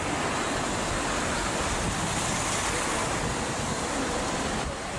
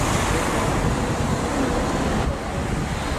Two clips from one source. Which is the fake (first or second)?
first